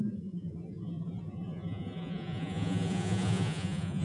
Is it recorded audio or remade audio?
remade